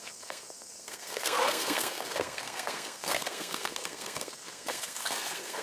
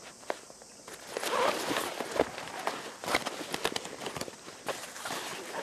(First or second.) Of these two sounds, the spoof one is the first